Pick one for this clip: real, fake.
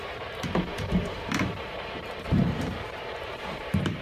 fake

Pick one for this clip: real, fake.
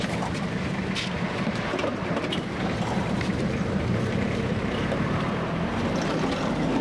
fake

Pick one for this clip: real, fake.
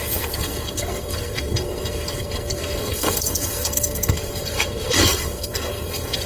fake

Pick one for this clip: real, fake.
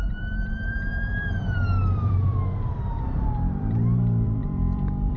fake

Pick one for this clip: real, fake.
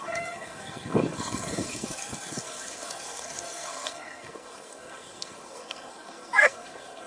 fake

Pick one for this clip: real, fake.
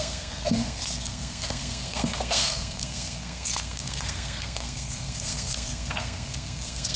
fake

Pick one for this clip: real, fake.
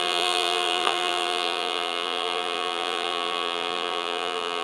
fake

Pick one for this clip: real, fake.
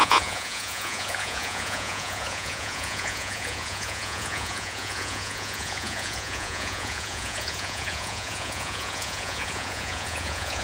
fake